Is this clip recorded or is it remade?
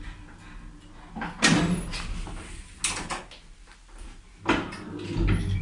recorded